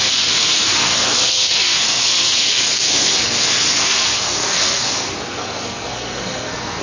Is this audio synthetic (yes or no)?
yes